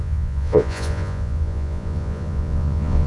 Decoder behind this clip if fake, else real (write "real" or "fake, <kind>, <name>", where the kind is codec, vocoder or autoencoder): fake, vocoder, Vocos